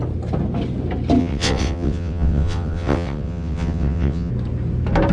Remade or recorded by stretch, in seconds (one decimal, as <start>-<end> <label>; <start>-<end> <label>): 0.0-1.2 recorded; 1.2-4.3 remade; 4.3-5.1 recorded